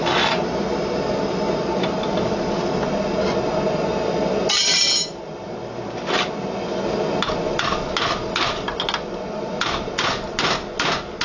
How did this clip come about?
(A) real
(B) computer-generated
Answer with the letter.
A